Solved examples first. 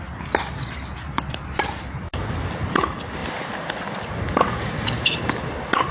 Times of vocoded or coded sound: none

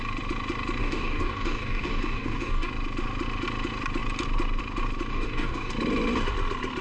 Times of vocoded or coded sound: 0.8-2.7 (codec, DAC); 5.1-5.7

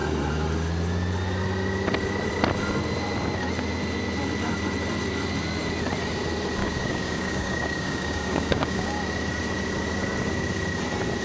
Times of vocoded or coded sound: 6.6-9.0 (codec, DAC)

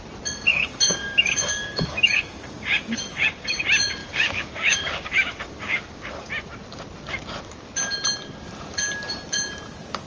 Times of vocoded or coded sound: 0.5-3.6 (codec, DAC); 4.0-6.3

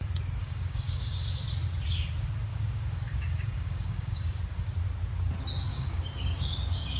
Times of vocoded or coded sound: 0.4-1.4 (codec, DAC); 2.5-4.4; 5.7-7.0